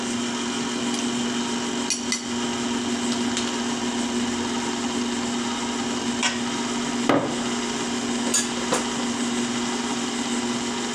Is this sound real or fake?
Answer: real